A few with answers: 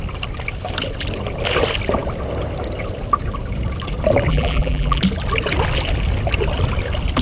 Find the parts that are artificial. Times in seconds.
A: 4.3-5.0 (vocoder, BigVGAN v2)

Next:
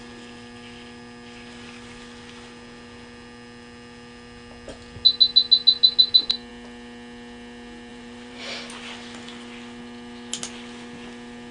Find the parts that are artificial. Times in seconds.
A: 7.9-8.4 (vocoder, BigVGAN v2)